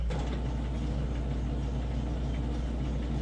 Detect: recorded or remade recorded